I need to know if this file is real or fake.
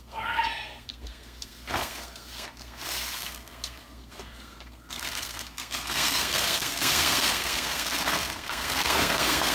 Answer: fake